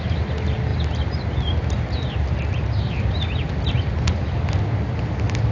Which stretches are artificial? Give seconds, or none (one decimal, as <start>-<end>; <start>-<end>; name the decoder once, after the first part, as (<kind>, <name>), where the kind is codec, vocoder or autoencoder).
none